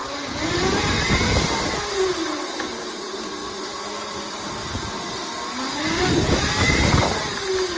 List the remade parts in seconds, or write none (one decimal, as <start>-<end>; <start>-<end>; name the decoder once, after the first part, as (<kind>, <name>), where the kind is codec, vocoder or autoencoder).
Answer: none